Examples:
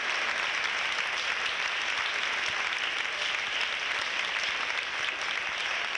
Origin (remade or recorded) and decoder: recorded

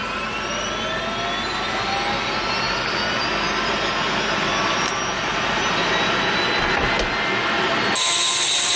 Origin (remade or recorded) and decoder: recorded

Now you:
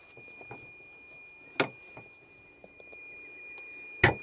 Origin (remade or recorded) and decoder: recorded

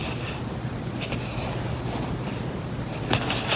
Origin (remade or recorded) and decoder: recorded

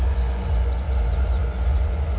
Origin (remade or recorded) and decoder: remade, vocoder, Vocos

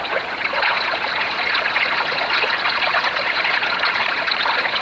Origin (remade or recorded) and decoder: remade, vocoder, Vocos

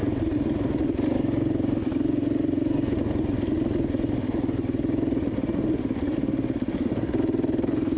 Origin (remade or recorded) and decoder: recorded